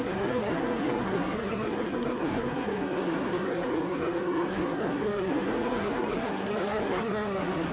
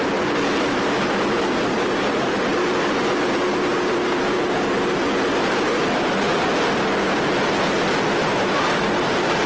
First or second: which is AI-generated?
first